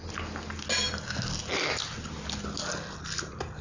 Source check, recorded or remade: recorded